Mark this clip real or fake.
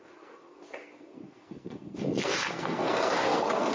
fake